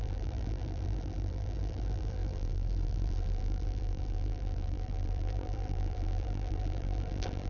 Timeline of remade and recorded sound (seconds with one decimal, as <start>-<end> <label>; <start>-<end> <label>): 0.0-7.5 remade